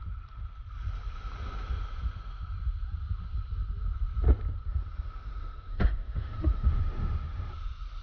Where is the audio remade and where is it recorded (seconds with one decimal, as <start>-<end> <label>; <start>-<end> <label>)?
0.0-5.7 recorded; 5.7-7.5 remade; 7.5-8.0 recorded